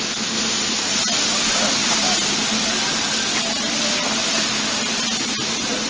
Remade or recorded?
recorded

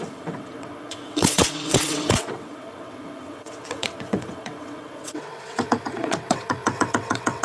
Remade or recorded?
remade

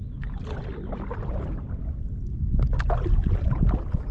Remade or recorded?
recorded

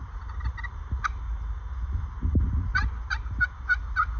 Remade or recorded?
recorded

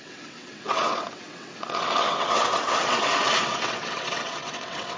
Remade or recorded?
remade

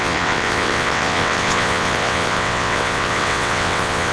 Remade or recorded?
remade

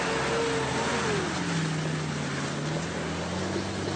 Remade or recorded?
recorded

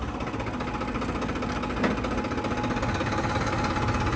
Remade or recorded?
recorded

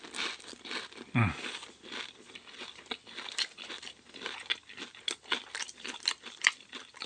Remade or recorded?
recorded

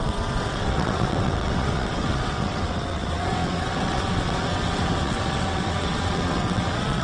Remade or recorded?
remade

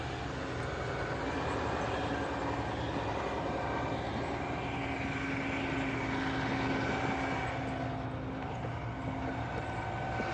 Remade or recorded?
recorded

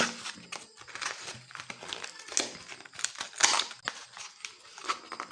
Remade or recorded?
recorded